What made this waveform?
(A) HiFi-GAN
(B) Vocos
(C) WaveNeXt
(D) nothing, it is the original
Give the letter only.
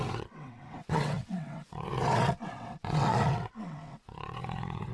C